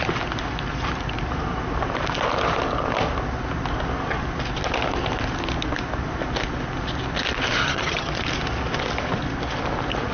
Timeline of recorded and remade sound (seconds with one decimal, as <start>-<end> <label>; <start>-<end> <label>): 0.0-7.6 recorded; 7.6-8.1 remade; 8.1-10.1 recorded